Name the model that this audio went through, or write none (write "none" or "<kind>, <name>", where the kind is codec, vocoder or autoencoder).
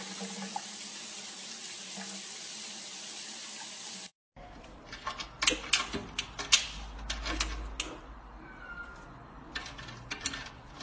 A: none